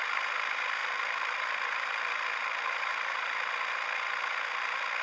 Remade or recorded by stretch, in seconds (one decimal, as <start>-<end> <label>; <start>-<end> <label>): 0.0-0.8 recorded; 0.8-2.0 remade; 2.0-5.0 recorded